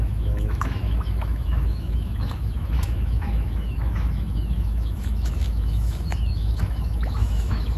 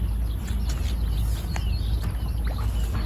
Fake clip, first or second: first